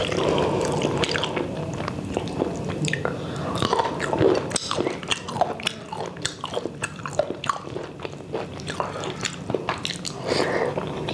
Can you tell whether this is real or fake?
real